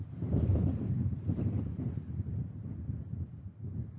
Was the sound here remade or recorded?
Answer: remade